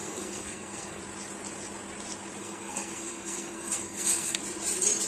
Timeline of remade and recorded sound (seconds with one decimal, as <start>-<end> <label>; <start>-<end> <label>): 0.0-1.0 remade; 1.0-2.4 recorded; 2.4-4.4 remade; 4.4-5.1 recorded